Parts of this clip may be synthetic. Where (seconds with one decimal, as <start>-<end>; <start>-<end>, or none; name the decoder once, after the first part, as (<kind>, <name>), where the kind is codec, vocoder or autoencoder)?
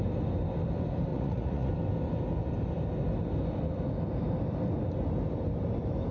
1.1-1.7 (vocoder, Vocos)